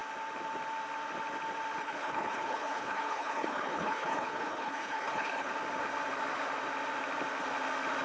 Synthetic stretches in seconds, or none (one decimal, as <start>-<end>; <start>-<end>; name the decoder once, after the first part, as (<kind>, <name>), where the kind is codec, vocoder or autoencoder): 1.8-5.5 (codec, HILCodec)